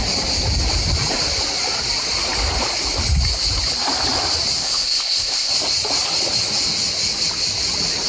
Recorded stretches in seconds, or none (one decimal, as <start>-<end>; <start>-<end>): 0.0-4.6; 5.5-8.1